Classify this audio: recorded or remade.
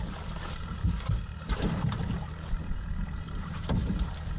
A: recorded